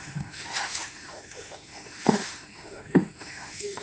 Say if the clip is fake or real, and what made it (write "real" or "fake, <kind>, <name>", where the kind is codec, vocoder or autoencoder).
fake, autoencoder, DAC-VAE